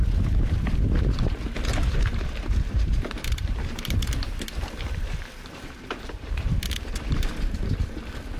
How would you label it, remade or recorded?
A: remade